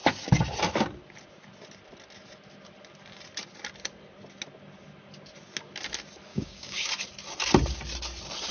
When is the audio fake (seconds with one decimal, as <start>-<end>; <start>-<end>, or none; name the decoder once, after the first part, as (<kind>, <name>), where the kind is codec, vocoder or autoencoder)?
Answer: 6.3-6.9 (codec, DAC)